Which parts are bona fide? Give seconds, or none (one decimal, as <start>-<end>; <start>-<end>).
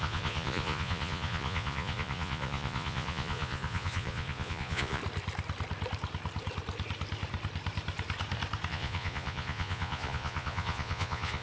5.0-8.7